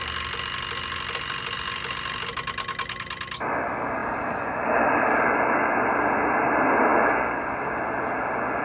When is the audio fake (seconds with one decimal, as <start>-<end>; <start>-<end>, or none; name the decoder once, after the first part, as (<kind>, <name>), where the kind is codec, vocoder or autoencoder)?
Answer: none